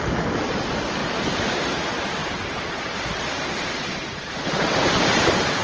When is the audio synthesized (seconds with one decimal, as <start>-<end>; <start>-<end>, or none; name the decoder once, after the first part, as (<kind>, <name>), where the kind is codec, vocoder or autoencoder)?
1.0-1.8 (vocoder, BigVGAN v2); 2.2-4.5